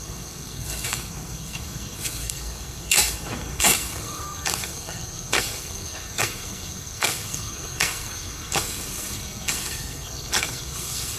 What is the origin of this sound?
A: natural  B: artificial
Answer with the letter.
B